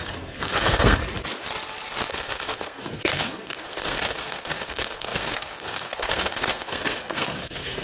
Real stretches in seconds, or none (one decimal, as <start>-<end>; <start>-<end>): 1.0-2.1